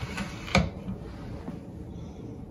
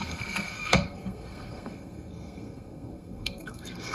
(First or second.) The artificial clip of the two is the second